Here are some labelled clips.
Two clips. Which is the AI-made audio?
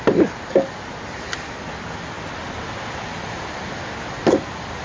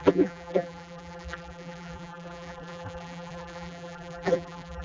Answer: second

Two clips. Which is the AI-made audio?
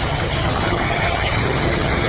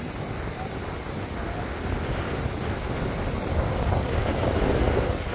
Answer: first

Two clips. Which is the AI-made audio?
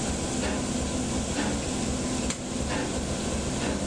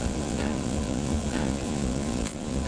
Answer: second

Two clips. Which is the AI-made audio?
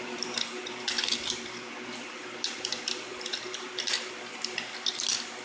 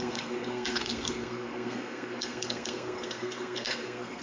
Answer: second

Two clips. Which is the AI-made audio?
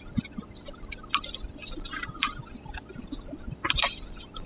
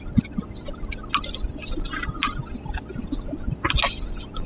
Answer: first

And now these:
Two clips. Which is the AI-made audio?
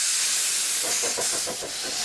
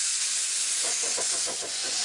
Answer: second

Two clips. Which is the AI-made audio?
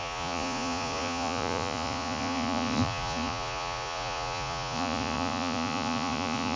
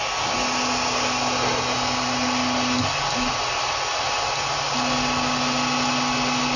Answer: first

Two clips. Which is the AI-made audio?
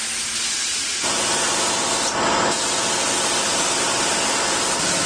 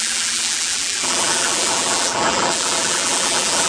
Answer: second